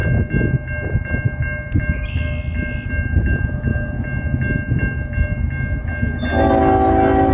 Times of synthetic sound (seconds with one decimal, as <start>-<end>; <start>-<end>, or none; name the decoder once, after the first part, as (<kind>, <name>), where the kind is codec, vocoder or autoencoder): none